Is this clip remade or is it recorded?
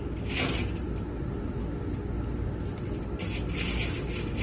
recorded